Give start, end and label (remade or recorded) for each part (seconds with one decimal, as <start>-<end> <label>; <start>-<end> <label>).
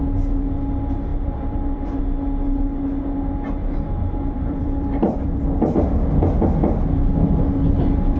0.0-1.1 recorded; 1.1-2.0 remade; 2.0-3.6 recorded; 3.6-5.5 remade; 5.5-8.2 recorded